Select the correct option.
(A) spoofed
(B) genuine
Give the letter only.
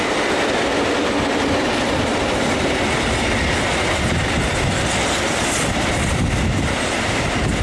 B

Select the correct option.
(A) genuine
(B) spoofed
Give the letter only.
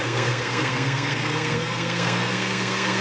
B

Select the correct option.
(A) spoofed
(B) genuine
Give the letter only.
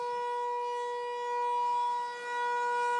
B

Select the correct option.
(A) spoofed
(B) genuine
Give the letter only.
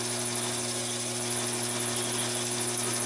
B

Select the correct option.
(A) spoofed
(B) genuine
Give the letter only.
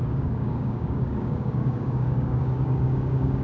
A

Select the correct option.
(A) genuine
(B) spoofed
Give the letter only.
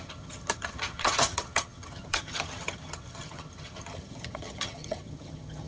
B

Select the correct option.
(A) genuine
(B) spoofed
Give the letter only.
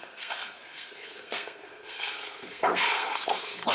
B